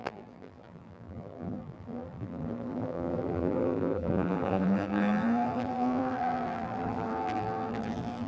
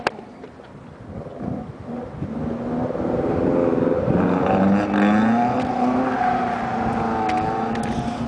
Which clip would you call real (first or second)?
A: second